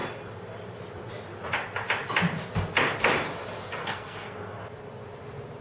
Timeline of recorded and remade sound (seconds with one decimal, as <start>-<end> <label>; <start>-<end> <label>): 0.0-3.8 recorded; 3.8-4.6 remade; 4.6-5.6 recorded